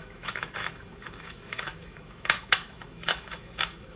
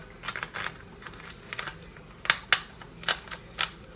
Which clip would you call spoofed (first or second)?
first